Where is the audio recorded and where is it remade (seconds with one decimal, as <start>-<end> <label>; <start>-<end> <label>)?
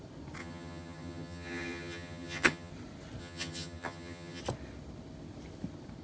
0.0-0.4 recorded; 0.4-2.7 remade; 2.7-3.2 recorded; 3.2-4.4 remade; 4.4-6.0 recorded